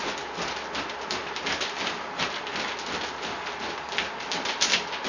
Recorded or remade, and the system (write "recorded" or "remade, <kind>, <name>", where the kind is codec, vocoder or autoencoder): recorded